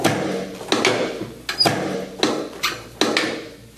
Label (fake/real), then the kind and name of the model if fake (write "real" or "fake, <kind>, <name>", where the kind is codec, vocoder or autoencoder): real